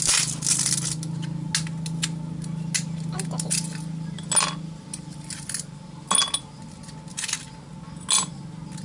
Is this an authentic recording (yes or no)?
yes